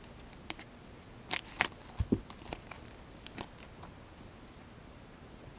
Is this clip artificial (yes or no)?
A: no